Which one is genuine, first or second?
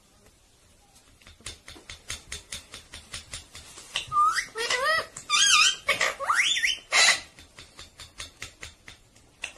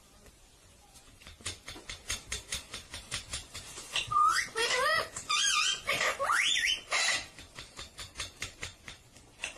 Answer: first